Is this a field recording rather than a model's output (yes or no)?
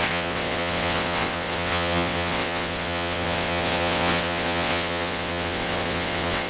no